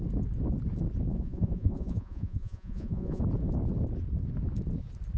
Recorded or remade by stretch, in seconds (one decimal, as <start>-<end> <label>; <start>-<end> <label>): 0.0-1.1 recorded; 1.1-3.2 remade; 3.2-5.2 recorded